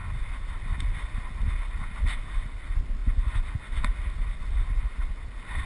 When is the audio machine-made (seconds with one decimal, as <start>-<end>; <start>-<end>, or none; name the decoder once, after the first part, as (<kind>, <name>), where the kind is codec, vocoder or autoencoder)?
none